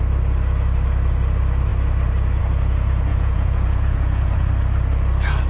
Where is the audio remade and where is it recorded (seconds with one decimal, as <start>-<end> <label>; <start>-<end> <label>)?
0.0-3.1 recorded; 3.1-4.5 remade; 4.5-5.5 recorded